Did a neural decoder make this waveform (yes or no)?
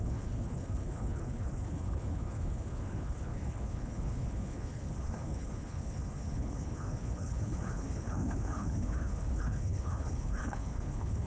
yes